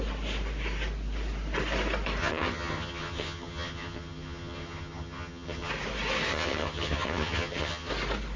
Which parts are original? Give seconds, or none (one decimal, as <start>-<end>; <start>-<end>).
0.0-2.2; 5.7-6.3; 7.9-8.4